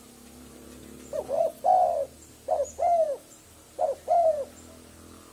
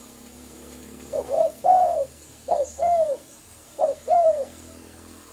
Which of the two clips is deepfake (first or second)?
second